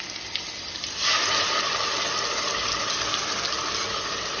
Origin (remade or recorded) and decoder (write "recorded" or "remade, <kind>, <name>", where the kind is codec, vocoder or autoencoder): recorded